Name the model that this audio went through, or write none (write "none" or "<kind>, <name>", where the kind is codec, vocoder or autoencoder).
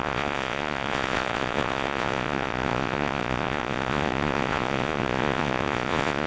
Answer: vocoder, Vocos